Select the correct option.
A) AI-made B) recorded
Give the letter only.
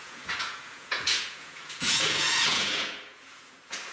A